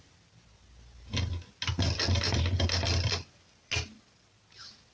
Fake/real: real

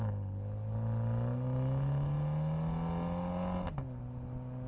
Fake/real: real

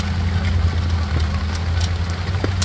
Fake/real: real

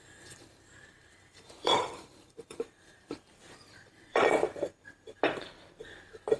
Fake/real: fake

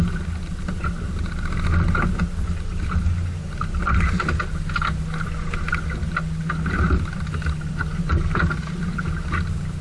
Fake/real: real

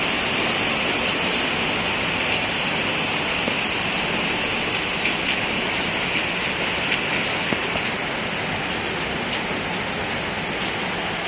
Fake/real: real